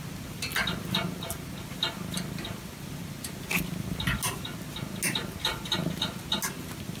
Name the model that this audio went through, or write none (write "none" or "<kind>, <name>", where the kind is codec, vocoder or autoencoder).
none